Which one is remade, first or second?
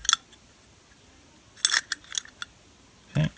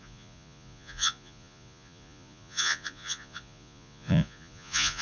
second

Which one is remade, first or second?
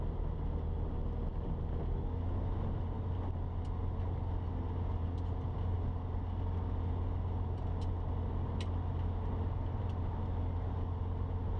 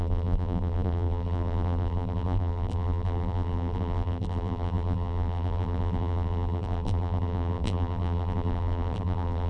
second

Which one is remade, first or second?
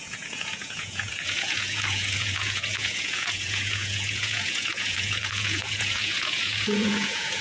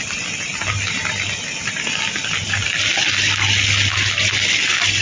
first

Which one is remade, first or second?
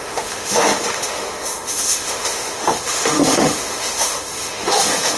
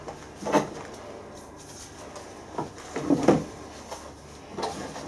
first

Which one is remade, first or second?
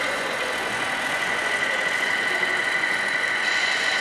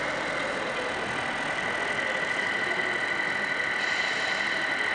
first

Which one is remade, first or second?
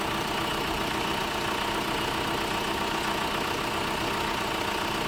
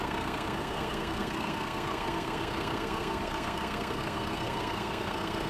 second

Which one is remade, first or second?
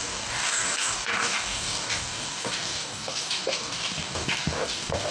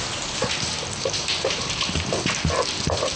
first